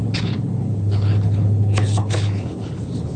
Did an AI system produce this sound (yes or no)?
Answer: yes